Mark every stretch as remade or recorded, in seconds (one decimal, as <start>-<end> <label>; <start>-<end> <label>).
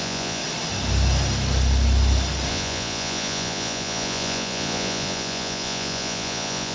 0.0-0.4 remade; 0.4-2.5 recorded; 2.5-6.7 remade